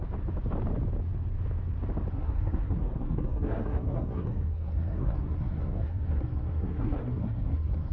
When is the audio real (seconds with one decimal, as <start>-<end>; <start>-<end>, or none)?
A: 0.0-2.1